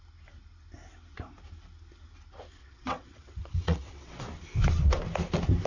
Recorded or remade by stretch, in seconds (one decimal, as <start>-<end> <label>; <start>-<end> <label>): 0.0-2.6 recorded; 2.6-4.2 remade; 4.2-5.7 recorded